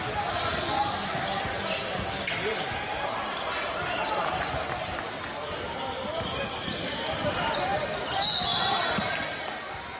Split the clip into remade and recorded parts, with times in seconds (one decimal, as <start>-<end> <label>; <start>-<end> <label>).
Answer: 0.0-10.0 recorded